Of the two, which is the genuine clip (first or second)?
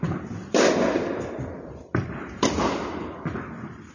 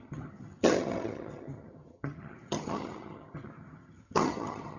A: first